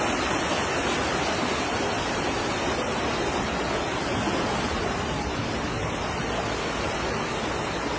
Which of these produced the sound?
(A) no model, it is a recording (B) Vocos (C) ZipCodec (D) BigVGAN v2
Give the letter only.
A